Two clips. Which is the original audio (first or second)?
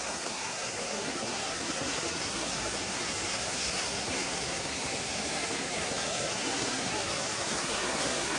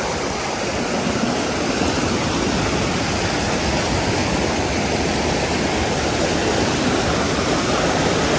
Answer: second